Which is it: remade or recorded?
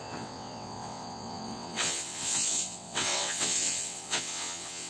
remade